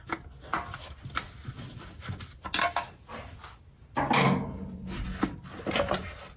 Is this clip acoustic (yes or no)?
yes